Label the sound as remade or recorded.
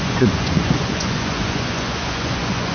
remade